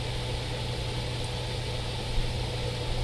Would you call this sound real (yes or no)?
yes